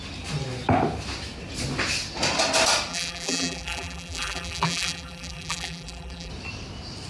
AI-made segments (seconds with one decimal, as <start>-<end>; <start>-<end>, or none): 2.9-6.3

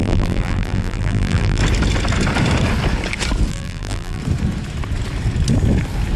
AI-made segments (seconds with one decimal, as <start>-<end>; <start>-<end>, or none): 0.0-1.6; 3.5-4.2

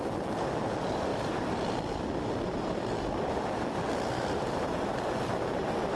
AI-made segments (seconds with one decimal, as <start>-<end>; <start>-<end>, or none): 1.1-4.7

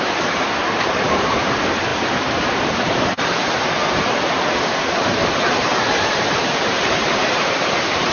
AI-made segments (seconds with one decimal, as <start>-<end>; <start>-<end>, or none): 0.0-8.1

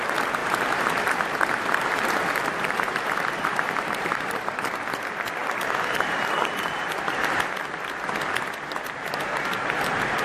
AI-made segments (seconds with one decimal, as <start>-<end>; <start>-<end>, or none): 0.4-4.7

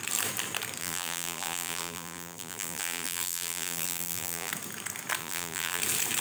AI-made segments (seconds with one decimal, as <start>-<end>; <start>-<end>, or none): 0.8-4.5; 5.2-5.8

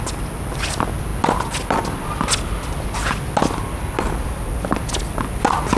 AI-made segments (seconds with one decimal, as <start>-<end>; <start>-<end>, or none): none